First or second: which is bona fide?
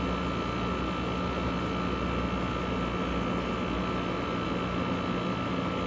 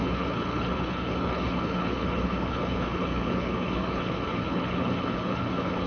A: first